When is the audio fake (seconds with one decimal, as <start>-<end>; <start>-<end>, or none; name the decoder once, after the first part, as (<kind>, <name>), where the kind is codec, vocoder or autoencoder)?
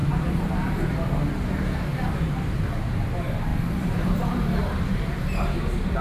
0.0-0.5 (vocoder, BigVGAN v2); 1.9-2.6; 3.5-6.0